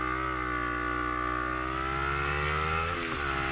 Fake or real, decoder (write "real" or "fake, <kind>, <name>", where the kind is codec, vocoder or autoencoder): real